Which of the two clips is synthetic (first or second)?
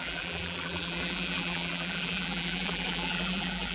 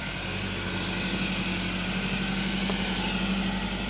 first